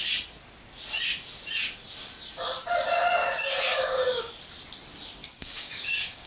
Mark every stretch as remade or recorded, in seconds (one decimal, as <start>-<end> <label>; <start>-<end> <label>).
0.0-3.7 recorded; 3.7-4.3 remade; 4.3-5.2 recorded; 5.2-6.3 remade